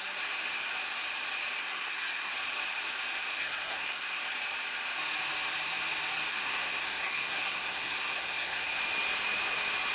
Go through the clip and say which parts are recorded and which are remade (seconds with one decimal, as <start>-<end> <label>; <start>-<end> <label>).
0.0-1.6 recorded; 1.6-2.3 remade; 2.3-3.4 recorded; 3.4-4.2 remade; 4.2-6.3 recorded; 6.3-8.8 remade; 8.8-9.9 recorded